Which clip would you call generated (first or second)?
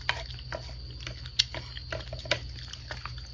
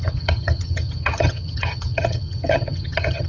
second